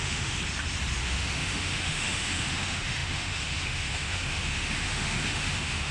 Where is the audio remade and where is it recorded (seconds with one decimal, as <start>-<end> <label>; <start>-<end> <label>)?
0.0-0.4 remade; 0.4-1.0 recorded; 1.0-5.9 remade